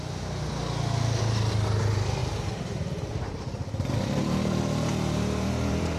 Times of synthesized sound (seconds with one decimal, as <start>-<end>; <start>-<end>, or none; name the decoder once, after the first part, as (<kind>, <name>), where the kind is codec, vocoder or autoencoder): 2.2-6.0 (vocoder, BigVGAN v2)